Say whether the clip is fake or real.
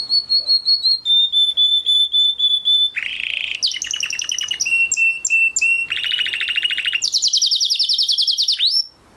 real